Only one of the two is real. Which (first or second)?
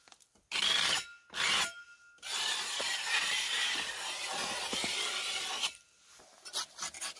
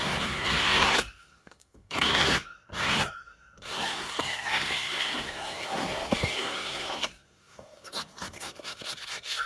first